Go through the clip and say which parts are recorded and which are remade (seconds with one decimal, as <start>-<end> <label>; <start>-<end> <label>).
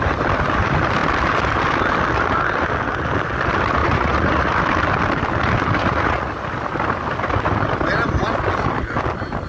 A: 0.0-3.8 recorded; 3.8-4.6 remade; 4.6-5.8 recorded; 5.8-6.3 remade; 6.3-9.5 recorded